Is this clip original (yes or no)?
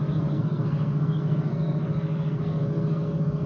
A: no